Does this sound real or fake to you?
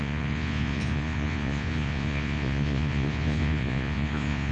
fake